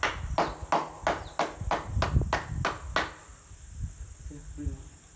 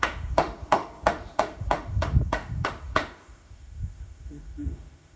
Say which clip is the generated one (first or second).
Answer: second